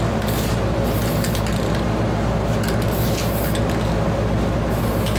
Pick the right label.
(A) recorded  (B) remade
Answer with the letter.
A